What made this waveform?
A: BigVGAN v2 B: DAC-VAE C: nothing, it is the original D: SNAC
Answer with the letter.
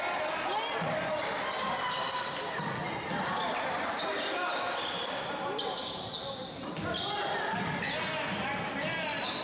C